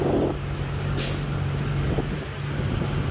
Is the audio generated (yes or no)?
no